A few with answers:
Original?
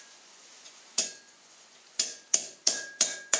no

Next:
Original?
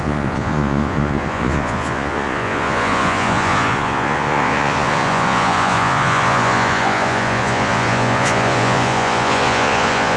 no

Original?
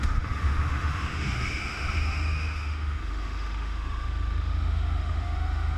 no